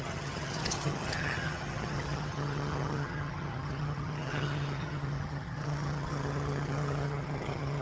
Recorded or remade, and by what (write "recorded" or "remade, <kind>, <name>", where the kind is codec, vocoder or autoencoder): remade, vocoder, HiFi-GAN